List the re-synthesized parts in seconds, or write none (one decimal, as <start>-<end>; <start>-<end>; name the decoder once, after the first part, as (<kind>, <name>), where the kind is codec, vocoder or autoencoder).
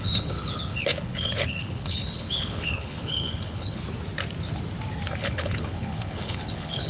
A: 0.0-3.8 (codec, HILCodec); 5.2-6.9